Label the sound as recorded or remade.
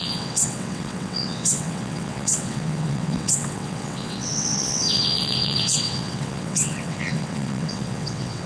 remade